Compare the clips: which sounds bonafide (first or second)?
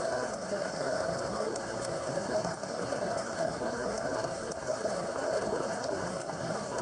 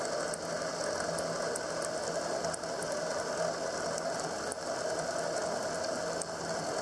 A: second